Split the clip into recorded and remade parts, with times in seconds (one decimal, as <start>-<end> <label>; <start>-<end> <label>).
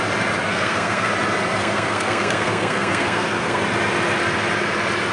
0.0-0.5 recorded; 0.5-1.1 remade; 1.1-1.6 recorded; 1.6-3.6 remade; 3.6-5.1 recorded